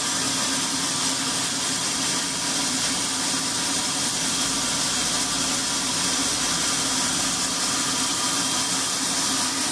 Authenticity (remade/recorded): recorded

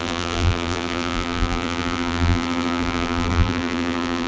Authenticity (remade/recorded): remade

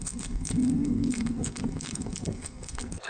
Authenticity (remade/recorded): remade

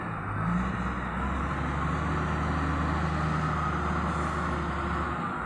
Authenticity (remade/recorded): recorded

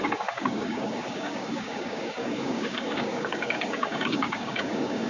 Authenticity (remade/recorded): remade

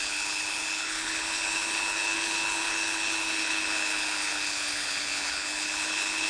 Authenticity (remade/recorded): remade